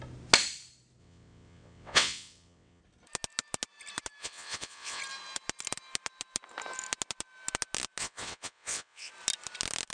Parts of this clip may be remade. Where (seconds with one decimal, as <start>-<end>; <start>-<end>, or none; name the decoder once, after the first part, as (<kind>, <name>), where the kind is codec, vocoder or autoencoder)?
1.0-2.8 (vocoder, WaveNeXt); 4.2-5.0; 8.0-9.1